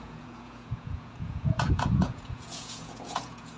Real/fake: fake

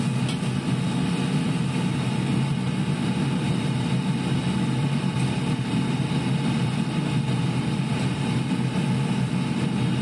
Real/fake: real